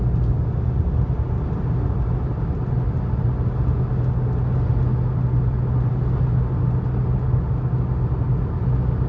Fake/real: real